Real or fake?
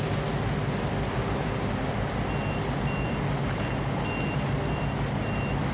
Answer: real